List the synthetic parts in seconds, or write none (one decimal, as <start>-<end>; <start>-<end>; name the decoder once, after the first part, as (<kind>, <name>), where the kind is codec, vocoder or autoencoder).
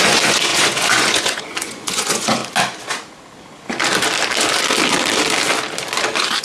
0.0-2.4 (vocoder, Vocos)